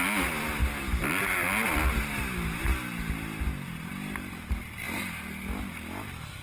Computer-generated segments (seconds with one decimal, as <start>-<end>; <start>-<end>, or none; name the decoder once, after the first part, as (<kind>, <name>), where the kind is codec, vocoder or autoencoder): none